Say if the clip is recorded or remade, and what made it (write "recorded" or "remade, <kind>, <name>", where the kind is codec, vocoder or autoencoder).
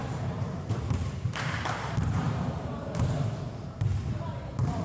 remade, vocoder, BigVGAN v2